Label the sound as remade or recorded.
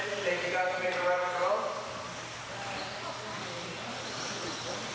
recorded